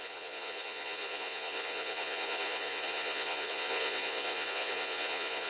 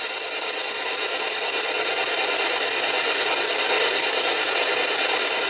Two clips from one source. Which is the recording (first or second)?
second